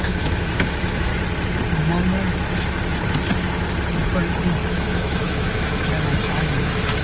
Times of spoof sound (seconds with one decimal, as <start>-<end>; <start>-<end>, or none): 0.0-1.1; 4.7-7.0